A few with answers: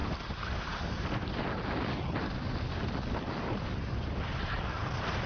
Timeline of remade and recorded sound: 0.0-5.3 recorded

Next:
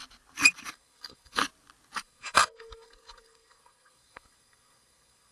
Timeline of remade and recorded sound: 0.0-0.7 recorded; 0.7-1.4 remade; 1.4-2.0 recorded; 2.0-5.3 remade

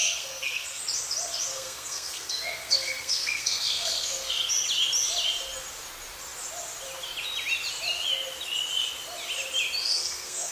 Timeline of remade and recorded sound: 0.0-0.8 remade; 0.8-1.5 recorded; 1.5-4.5 remade; 4.5-9.8 recorded; 9.8-10.5 remade

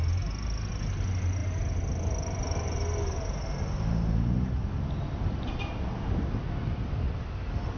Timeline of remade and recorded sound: 0.0-7.8 recorded

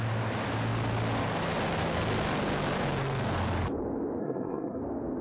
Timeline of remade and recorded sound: 0.0-4.2 recorded; 4.2-4.8 remade; 4.8-5.2 recorded

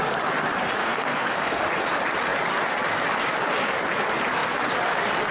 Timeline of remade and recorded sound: 0.0-0.8 recorded; 0.8-1.6 remade; 1.6-5.3 recorded

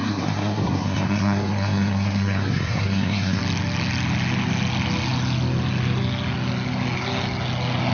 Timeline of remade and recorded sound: 0.0-3.4 remade; 3.4-7.9 recorded

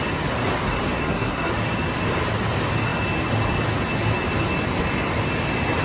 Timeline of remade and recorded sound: 0.0-1.0 recorded; 1.0-1.5 remade; 1.5-5.8 recorded